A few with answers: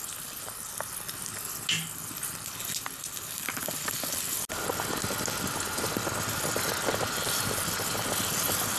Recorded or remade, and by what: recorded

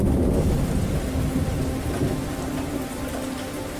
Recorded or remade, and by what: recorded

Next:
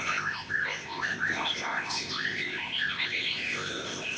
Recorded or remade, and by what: remade, codec, ZipCodec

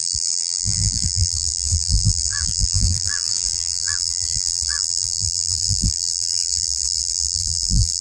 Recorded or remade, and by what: remade, vocoder, BigVGAN v2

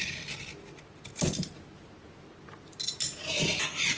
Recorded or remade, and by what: recorded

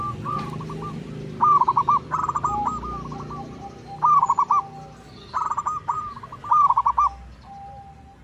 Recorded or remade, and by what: recorded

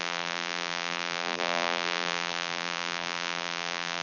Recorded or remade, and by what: remade, vocoder, BigVGAN v2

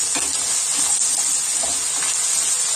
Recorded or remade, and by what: recorded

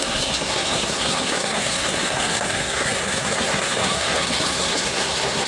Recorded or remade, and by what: remade, codec, SNAC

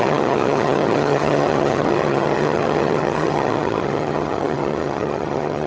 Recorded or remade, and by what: remade, vocoder, HiFi-GAN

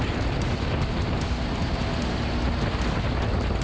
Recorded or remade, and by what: recorded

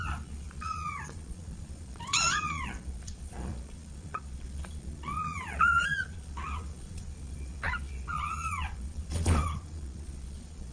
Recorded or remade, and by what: remade, vocoder, Vocos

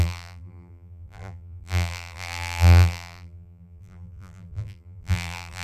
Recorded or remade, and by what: remade, vocoder, BigVGAN v2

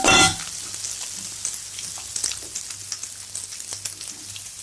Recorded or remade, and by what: recorded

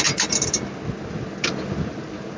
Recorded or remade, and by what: recorded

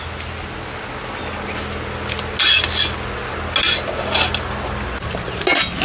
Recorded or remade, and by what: recorded